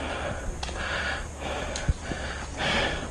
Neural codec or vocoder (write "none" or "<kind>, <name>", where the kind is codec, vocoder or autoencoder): none